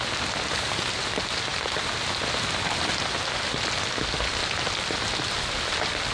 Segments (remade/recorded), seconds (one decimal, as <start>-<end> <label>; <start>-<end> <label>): 0.0-6.1 recorded